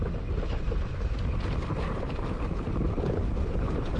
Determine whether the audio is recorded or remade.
recorded